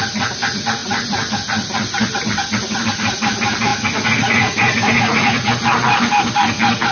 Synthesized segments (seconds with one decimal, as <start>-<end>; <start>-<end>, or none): 3.7-5.5